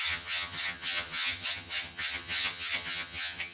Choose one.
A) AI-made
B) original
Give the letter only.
A